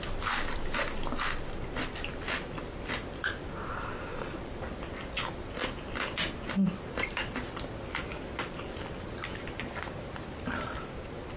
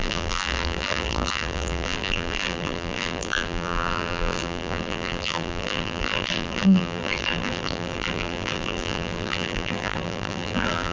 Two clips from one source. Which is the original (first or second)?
first